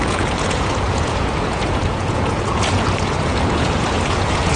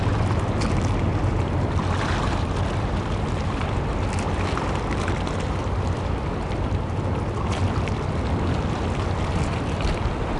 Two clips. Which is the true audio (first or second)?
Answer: second